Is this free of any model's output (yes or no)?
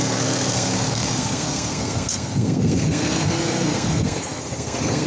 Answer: no